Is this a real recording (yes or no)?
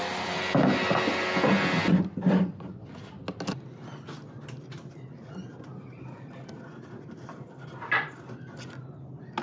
yes